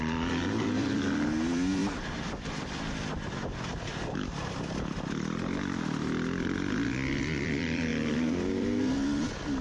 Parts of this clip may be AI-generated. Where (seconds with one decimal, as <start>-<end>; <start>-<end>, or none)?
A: 0.0-7.9; 8.6-9.6